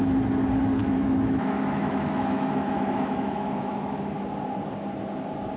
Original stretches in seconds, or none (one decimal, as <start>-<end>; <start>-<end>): 0.0-0.8; 4.2-5.6